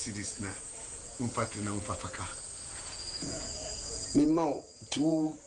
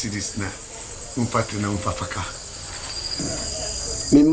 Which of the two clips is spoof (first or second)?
first